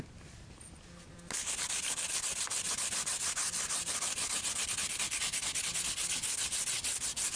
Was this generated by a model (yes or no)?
no